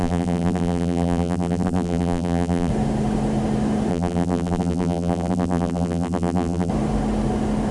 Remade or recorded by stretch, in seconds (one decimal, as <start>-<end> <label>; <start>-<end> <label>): 0.0-2.7 remade; 2.7-3.9 recorded; 3.9-6.7 remade; 6.7-7.7 recorded